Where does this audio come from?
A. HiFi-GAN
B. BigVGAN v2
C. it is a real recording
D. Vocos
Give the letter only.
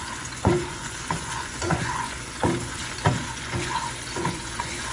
D